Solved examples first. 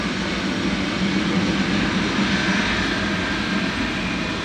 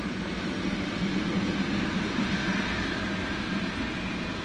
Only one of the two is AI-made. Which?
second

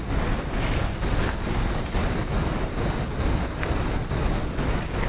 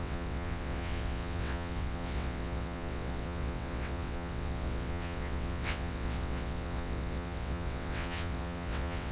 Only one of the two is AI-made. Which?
second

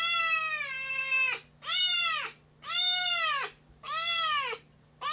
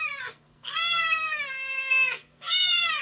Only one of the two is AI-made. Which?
second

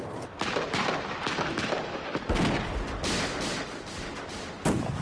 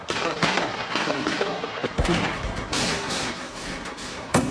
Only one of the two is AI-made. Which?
second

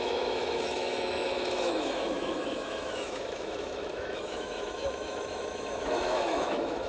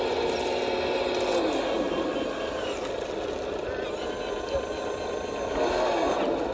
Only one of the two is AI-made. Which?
first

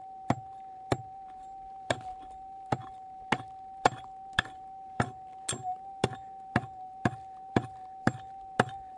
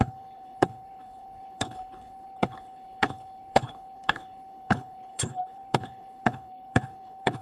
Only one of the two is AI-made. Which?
second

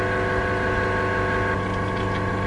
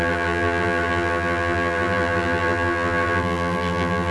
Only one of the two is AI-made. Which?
second